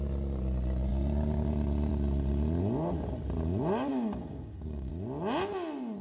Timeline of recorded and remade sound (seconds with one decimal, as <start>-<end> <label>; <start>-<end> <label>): 0.0-3.9 recorded; 3.9-4.9 remade; 4.9-6.0 recorded